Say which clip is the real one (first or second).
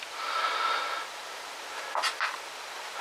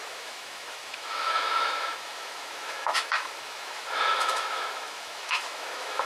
first